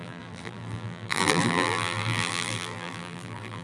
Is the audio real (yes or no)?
no